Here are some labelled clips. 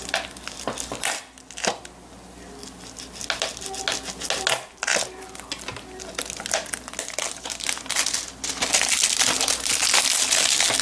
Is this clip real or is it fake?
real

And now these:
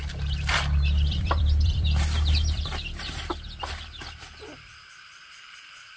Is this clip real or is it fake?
fake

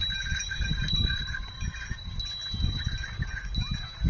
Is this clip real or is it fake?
real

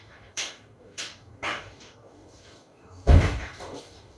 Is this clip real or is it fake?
fake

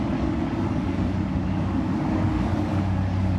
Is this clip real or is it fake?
fake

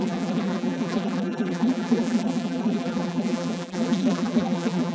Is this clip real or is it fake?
fake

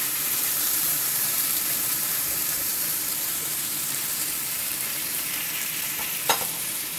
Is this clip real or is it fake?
fake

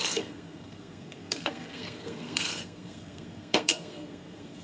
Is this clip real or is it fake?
fake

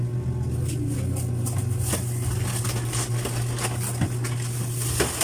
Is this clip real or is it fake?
real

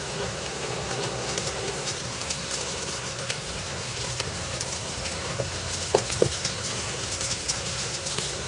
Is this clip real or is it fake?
fake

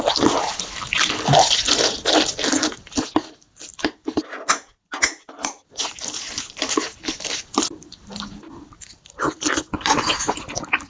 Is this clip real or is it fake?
real